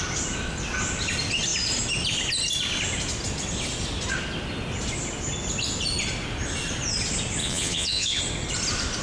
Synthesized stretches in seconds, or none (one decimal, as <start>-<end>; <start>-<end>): 7.4-8.2